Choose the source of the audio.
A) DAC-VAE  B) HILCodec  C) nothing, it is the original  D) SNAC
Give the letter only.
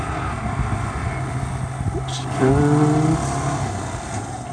C